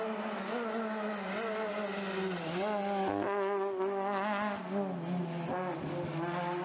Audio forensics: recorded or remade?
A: recorded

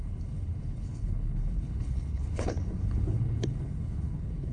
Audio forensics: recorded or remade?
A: remade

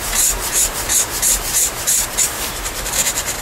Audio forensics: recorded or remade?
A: remade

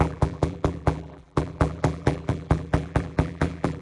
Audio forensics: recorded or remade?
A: remade